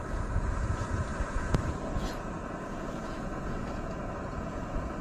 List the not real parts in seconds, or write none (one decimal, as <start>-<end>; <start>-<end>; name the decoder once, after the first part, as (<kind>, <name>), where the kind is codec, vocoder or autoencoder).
0.0-5.0 (vocoder, Vocos)